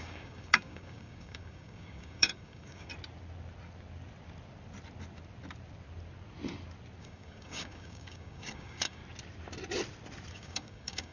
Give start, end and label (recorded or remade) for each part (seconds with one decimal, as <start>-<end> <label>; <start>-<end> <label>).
0.0-2.9 remade; 2.9-7.0 recorded; 7.0-9.0 remade; 9.0-10.3 recorded; 10.3-11.1 remade

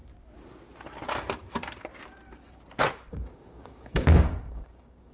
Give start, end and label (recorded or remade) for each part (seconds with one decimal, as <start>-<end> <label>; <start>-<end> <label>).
0.0-3.1 recorded; 3.1-5.1 remade

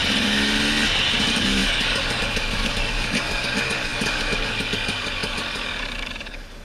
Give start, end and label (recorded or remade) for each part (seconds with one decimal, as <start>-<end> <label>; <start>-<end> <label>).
0.0-1.1 recorded; 1.1-6.6 remade

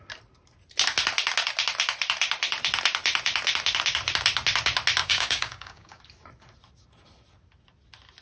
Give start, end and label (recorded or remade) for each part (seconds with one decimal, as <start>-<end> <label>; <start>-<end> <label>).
0.0-5.0 recorded; 5.0-6.0 remade; 6.0-8.2 recorded

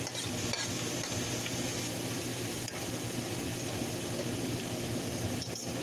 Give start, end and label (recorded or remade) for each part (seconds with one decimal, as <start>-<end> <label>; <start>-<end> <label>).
0.0-5.8 recorded

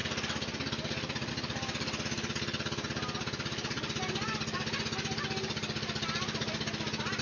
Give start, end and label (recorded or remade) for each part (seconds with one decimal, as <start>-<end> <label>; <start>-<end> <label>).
0.0-7.2 recorded

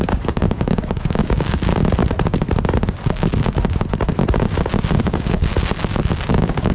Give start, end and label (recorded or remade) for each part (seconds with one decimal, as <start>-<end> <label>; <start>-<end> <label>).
0.0-1.7 remade; 1.7-5.0 recorded; 5.0-5.5 remade; 5.5-6.3 recorded; 6.3-6.7 remade